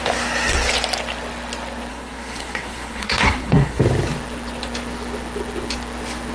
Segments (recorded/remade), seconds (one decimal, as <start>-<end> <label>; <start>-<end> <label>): 0.0-1.9 recorded; 1.9-3.8 remade; 3.8-6.3 recorded